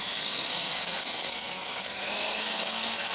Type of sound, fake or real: fake